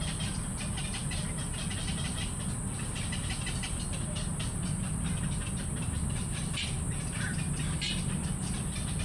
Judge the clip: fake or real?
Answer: real